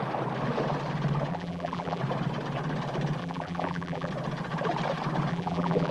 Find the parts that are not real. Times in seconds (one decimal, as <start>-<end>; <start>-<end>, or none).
1.3-2.0; 3.2-4.1; 5.3-5.9